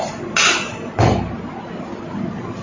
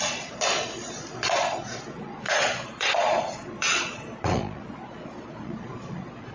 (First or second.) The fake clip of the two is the second